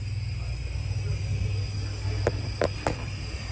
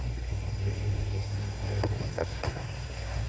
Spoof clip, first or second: second